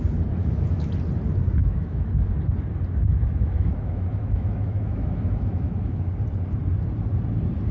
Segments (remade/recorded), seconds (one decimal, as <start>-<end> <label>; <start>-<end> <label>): 0.0-0.4 recorded; 0.4-0.9 remade; 0.9-1.6 recorded; 1.6-2.1 remade; 2.1-3.1 recorded; 3.1-6.1 remade; 6.1-7.7 recorded